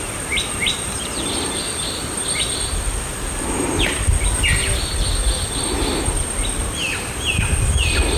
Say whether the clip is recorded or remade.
recorded